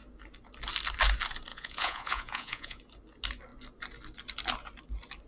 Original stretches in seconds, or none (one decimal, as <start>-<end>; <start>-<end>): 0.0-1.5; 2.8-5.3